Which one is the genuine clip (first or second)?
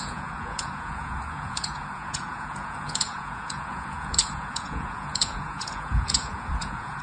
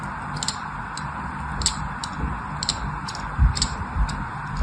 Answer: second